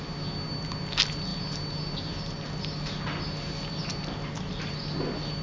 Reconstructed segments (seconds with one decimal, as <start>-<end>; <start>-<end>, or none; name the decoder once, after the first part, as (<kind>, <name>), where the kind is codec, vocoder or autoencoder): none